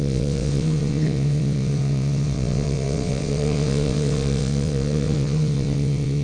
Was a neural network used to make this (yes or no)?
yes